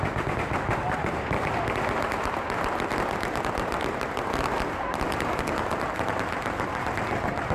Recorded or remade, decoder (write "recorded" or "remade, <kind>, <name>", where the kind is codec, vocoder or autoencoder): recorded